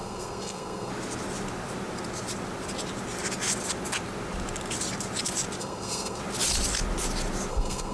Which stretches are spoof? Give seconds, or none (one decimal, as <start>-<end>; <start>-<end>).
0.0-0.9; 5.6-6.2; 7.5-7.9